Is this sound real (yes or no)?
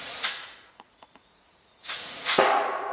no